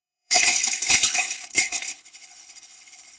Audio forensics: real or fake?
fake